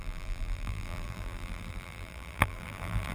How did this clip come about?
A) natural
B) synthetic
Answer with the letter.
B